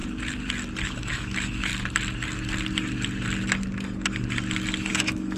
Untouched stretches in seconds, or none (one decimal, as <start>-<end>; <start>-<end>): 0.0-0.8; 1.7-4.9